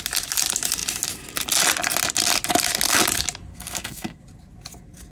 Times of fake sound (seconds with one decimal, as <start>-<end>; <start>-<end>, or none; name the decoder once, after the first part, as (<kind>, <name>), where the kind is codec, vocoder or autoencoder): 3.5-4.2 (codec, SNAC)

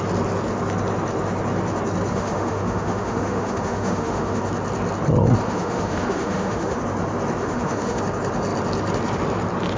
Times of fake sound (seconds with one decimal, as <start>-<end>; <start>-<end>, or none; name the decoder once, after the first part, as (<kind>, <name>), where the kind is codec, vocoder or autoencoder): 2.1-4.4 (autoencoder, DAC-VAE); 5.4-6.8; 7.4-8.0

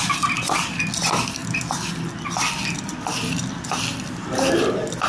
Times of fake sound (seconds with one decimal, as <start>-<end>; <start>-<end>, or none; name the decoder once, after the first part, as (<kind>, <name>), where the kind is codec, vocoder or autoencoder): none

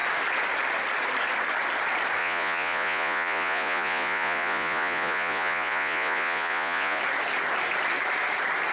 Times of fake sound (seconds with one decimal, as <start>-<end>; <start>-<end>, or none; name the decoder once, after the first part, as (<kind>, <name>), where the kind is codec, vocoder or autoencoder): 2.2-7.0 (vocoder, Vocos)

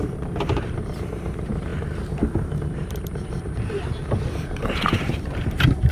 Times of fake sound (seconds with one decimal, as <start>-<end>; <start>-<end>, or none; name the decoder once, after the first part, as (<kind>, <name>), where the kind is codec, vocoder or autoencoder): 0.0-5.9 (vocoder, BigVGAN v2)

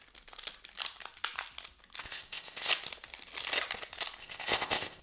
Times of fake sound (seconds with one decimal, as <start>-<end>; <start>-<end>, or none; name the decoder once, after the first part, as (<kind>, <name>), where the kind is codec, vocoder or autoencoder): 2.0-2.7 (codec, ZipCodec); 4.2-5.0

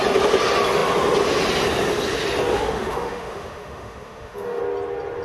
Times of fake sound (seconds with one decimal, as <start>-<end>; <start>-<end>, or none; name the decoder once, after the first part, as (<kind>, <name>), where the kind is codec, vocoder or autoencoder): 2.5-4.6 (autoencoder, DAC-VAE)

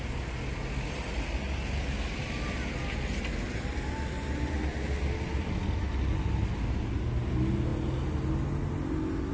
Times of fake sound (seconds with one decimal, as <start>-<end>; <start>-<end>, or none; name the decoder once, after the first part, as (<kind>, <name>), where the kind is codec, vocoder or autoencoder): none